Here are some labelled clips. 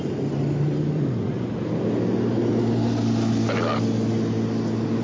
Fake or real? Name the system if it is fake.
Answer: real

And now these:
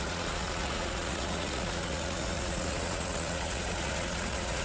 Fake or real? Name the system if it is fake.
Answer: fake, vocoder, Vocos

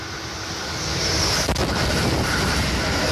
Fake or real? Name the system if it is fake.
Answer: real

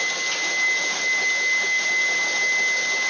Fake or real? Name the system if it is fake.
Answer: real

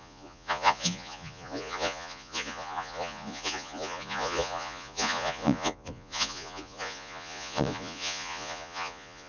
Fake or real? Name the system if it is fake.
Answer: fake, vocoder, Vocos